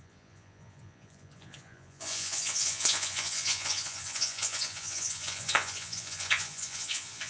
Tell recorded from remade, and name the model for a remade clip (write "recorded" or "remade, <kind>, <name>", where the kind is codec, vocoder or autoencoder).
remade, vocoder, Vocos